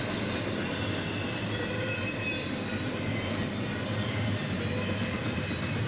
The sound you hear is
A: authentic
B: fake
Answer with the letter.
A